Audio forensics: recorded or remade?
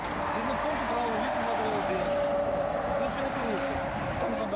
recorded